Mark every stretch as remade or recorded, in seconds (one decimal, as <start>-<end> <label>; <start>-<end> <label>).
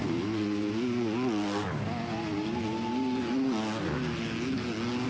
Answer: 0.0-5.1 recorded